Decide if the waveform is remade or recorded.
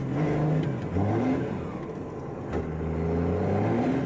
recorded